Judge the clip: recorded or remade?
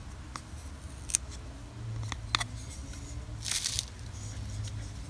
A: recorded